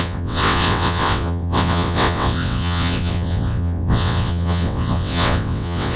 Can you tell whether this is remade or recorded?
remade